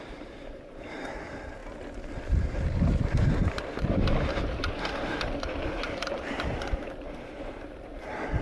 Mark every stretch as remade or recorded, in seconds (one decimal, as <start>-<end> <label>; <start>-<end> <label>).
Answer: 0.0-1.6 remade; 1.6-2.2 recorded; 2.2-8.4 remade